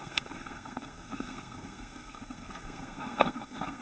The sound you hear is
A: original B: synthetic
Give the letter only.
B